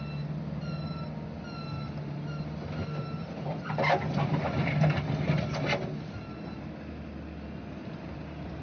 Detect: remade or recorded recorded